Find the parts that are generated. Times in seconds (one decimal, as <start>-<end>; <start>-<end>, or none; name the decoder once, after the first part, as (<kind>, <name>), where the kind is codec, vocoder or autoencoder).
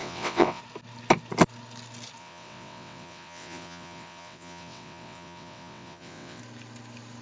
0.0-0.6 (vocoder, WaveNeXt); 2.2-6.4